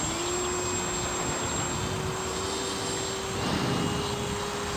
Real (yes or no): yes